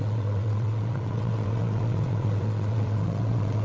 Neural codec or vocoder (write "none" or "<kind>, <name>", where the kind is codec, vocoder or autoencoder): vocoder, WaveNeXt